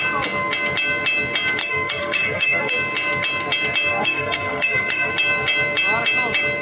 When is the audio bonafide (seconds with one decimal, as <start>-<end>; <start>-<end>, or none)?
0.0-1.6; 2.7-3.9; 5.1-6.6